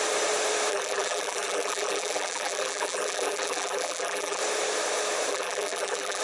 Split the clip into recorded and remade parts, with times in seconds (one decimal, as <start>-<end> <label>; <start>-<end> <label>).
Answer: 0.0-0.7 recorded; 0.7-4.4 remade; 4.4-5.3 recorded; 5.3-6.2 remade